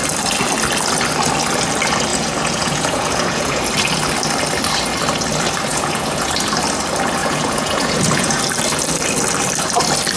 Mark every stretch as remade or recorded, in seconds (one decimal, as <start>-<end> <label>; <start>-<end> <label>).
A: 0.0-2.1 recorded; 2.1-3.6 remade; 3.6-5.7 recorded; 5.7-6.3 remade; 6.3-7.2 recorded; 7.2-8.4 remade; 8.4-10.2 recorded